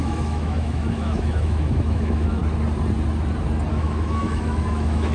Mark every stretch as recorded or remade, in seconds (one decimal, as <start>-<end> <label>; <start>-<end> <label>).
0.0-2.4 remade; 2.4-3.7 recorded; 3.7-5.1 remade